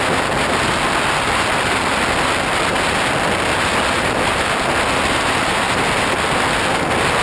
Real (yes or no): yes